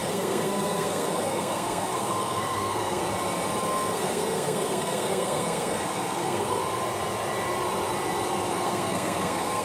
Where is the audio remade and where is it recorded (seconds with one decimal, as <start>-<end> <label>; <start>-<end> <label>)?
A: 0.0-3.0 remade; 3.0-3.7 recorded; 3.7-6.6 remade; 6.6-8.5 recorded; 8.5-9.6 remade